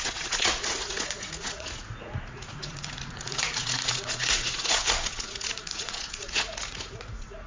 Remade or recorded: remade